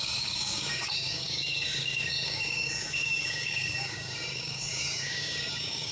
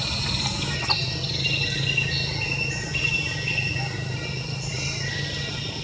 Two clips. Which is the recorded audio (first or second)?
second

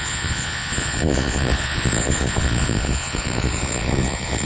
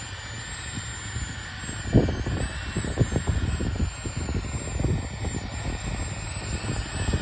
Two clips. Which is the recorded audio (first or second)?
second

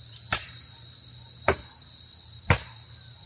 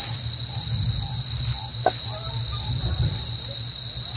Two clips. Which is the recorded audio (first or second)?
second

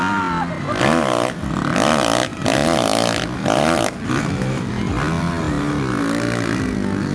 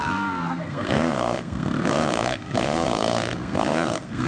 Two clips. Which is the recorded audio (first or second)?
first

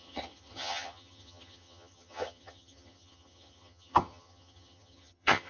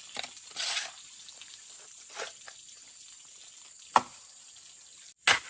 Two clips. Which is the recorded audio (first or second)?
second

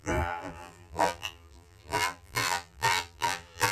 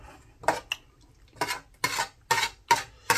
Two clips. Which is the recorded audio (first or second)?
second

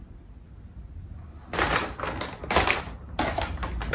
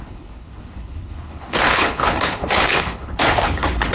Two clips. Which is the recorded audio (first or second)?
first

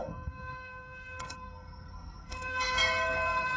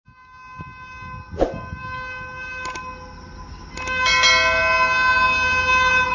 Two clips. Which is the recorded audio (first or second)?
second